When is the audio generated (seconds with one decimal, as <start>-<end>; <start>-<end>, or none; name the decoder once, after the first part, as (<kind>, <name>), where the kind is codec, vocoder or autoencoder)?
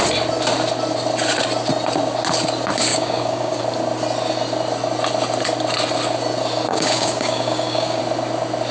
2.9-3.6 (codec, DAC); 6.7-8.0